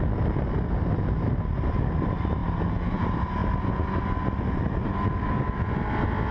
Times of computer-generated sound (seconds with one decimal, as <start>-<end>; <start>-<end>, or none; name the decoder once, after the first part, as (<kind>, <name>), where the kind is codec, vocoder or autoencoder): none